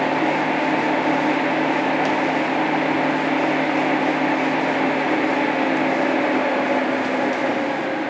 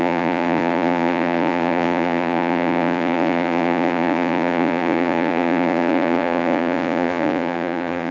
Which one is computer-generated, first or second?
second